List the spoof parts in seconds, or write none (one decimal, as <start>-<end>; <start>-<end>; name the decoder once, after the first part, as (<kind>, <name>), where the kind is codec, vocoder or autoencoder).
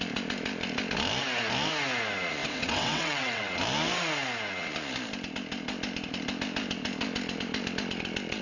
2.4-3.5 (vocoder, WaveNeXt)